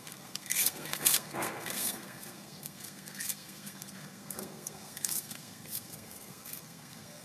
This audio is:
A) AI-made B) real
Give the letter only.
A